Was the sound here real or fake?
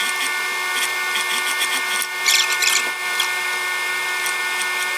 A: real